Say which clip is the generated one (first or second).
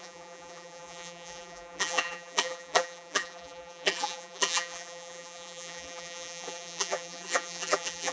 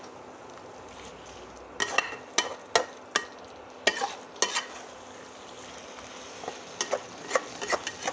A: first